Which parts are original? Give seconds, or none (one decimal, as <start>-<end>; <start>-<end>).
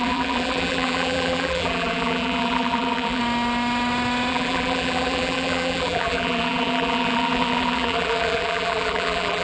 3.2-4.3